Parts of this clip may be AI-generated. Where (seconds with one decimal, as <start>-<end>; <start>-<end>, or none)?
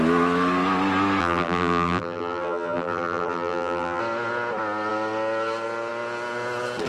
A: 1.2-4.0